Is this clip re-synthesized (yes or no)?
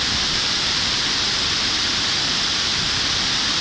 no